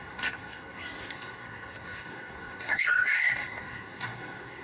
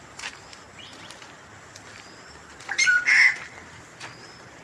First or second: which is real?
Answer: second